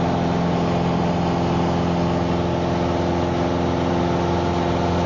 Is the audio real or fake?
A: real